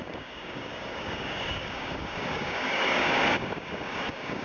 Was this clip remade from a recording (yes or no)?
yes